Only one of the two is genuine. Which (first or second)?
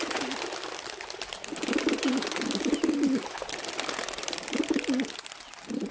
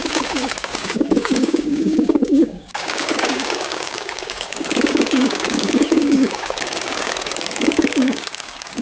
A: first